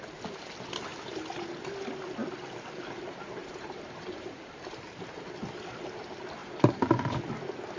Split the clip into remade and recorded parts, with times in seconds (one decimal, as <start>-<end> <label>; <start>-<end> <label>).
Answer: 0.0-3.4 recorded; 3.4-5.2 remade; 5.2-6.4 recorded; 6.4-7.0 remade; 7.0-7.8 recorded